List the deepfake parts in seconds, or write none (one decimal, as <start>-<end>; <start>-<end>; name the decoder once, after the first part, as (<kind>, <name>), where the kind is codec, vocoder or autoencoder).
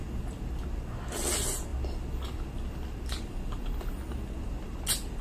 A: none